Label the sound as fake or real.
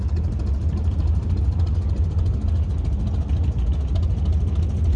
real